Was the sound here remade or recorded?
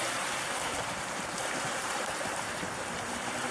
remade